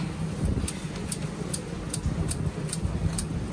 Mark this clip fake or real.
real